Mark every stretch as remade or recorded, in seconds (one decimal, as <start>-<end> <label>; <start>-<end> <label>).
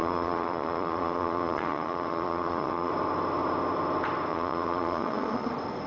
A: 0.0-2.9 remade; 2.9-4.3 recorded; 4.3-5.5 remade; 5.5-5.9 recorded